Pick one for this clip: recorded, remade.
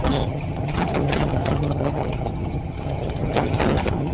remade